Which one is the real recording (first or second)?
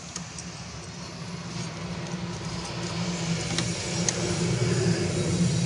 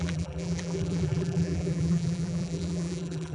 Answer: first